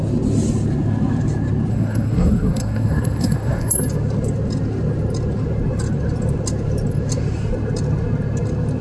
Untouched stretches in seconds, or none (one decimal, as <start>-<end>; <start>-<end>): 0.0-1.7; 3.8-8.8